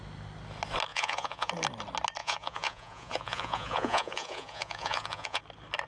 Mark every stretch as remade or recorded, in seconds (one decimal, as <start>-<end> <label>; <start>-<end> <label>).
0.0-0.9 recorded; 0.9-1.5 remade; 1.5-2.2 recorded; 2.2-5.4 remade; 5.4-5.9 recorded